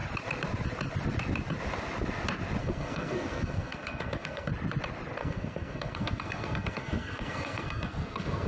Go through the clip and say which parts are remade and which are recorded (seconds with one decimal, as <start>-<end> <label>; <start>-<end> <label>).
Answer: 0.0-2.6 recorded; 2.6-4.5 remade; 4.5-5.2 recorded; 5.2-8.5 remade